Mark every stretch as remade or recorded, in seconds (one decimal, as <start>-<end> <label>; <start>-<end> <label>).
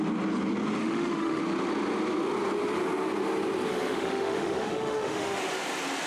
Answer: 0.0-0.8 recorded; 0.8-1.4 remade; 1.4-3.7 recorded; 3.7-5.4 remade; 5.4-6.1 recorded